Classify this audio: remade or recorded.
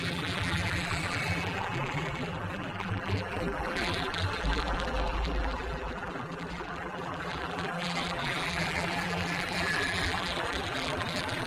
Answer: remade